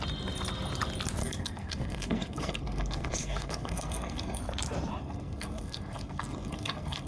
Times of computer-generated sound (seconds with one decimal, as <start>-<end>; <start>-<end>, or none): 1.2-4.4; 5.0-7.1